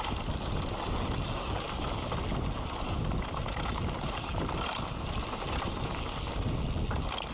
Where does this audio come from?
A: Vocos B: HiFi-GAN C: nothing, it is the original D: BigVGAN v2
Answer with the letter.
C